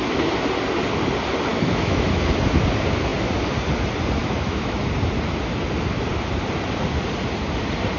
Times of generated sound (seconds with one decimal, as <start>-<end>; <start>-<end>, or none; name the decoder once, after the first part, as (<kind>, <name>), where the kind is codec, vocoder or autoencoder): 1.5-2.2 (autoencoder, DAC-VAE); 4.2-4.8